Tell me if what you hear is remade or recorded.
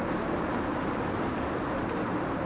recorded